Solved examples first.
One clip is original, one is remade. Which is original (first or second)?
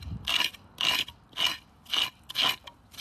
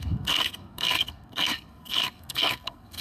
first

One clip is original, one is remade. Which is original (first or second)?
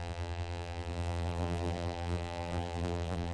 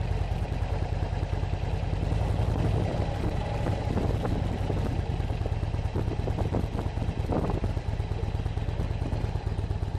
second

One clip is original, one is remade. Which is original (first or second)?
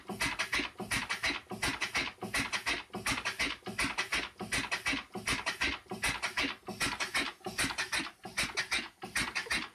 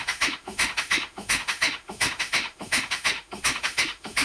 first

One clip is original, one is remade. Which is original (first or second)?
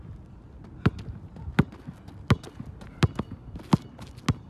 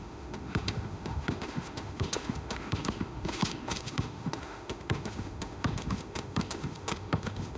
first